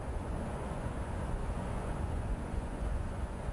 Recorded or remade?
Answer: remade